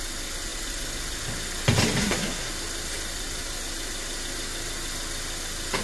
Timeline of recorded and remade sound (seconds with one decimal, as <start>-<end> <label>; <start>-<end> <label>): 0.0-2.0 recorded; 2.0-2.5 remade; 2.5-5.8 recorded